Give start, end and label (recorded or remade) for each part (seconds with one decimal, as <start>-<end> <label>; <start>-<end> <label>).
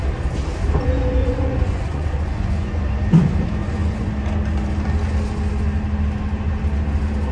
0.0-1.2 recorded; 1.2-2.8 remade; 2.8-3.6 recorded; 3.6-4.1 remade; 4.1-7.3 recorded